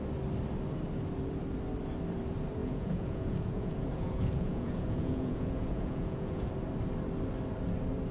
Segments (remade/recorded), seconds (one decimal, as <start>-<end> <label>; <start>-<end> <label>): 0.0-2.6 recorded; 2.6-6.5 remade; 6.5-8.1 recorded